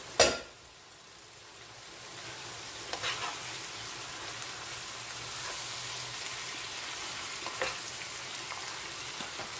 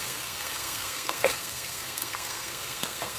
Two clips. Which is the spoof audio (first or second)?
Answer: second